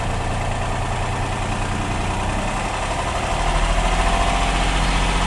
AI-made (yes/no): no